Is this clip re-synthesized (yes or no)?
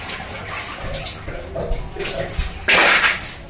no